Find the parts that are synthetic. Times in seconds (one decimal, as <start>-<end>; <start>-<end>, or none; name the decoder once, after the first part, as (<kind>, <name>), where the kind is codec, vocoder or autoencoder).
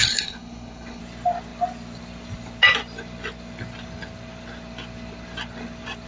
0.0-1.0 (codec, HILCodec)